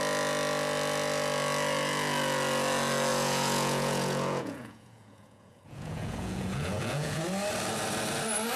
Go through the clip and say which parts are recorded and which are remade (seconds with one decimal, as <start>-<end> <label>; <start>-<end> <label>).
0.0-3.1 recorded; 3.1-7.2 remade; 7.2-8.6 recorded